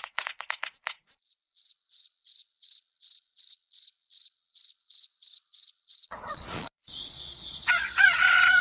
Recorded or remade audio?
remade